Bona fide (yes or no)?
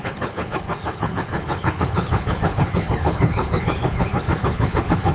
no